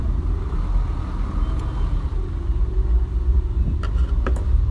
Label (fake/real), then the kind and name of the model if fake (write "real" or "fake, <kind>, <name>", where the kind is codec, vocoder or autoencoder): real